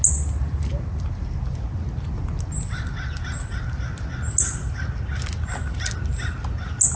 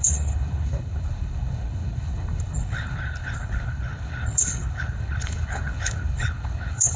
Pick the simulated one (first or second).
second